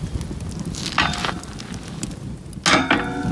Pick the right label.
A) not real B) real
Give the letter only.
B